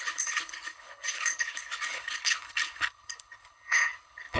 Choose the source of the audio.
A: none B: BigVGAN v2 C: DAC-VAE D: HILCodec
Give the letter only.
D